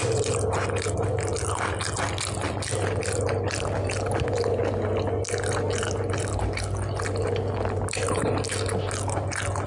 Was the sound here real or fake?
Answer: real